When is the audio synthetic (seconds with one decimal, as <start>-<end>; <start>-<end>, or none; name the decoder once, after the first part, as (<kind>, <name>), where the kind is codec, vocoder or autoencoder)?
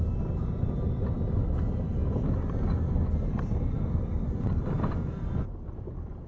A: none